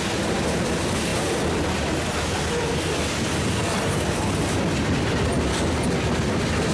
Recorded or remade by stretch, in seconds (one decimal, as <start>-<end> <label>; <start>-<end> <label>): 0.0-6.7 recorded